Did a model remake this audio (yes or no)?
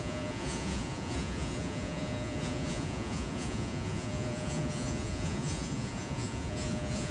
yes